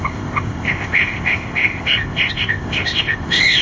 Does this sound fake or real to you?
fake